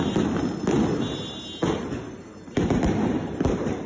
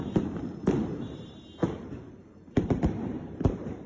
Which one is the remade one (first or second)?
second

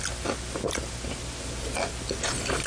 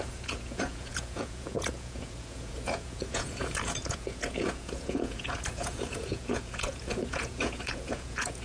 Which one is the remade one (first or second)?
second